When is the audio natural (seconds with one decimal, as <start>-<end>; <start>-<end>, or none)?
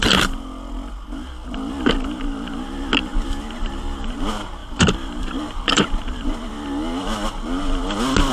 0.0-3.1; 4.1-4.6; 6.3-8.3